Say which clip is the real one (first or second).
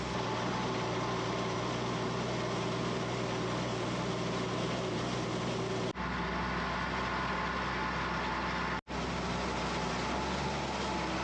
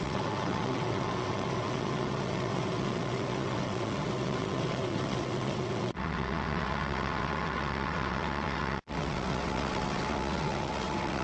first